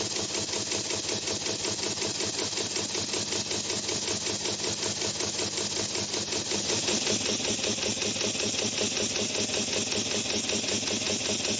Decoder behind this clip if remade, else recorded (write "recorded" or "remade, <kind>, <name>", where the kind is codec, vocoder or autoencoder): recorded